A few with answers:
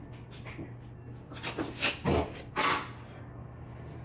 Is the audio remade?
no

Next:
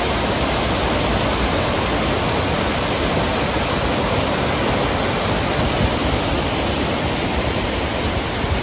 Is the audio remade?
no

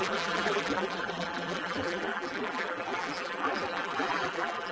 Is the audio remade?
yes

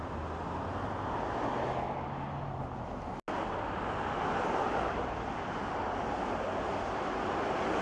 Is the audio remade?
no